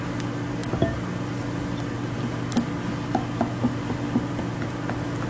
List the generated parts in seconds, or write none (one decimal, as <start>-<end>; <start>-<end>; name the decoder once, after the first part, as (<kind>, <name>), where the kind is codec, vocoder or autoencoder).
none